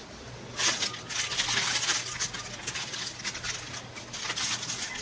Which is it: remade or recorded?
recorded